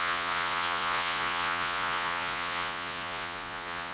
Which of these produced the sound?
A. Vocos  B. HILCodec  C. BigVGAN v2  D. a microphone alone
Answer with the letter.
A